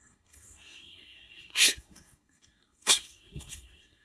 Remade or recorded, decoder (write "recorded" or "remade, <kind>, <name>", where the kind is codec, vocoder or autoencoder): remade, codec, SNAC